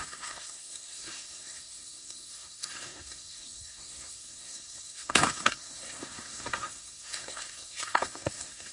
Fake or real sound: fake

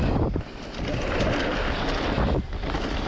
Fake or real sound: real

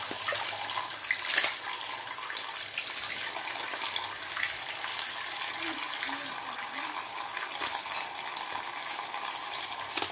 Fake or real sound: real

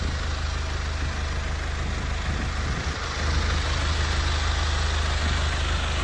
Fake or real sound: real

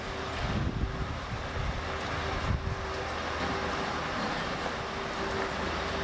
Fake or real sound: real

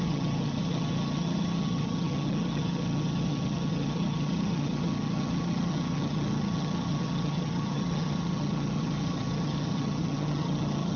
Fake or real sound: fake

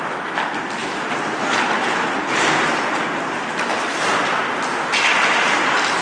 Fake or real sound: real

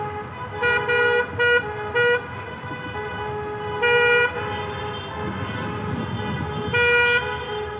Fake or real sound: real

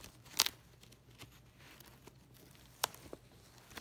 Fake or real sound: fake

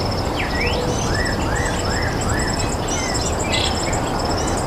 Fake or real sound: real